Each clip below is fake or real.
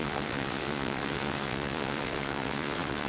fake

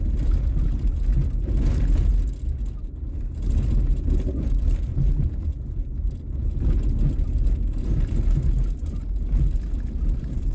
real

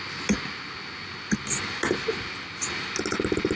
real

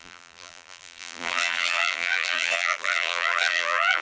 fake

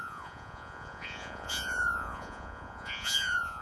fake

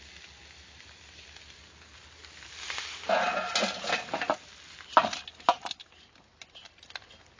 real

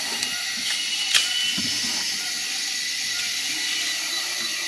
real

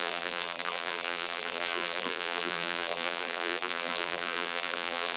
fake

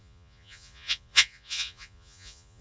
fake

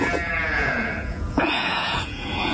fake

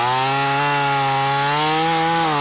real